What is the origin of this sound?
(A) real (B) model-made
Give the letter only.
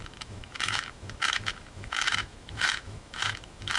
B